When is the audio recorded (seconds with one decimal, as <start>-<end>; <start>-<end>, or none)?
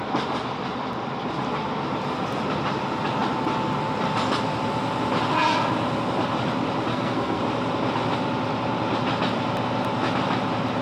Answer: 0.0-6.9; 7.4-10.8